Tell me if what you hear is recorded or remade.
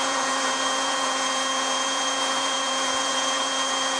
remade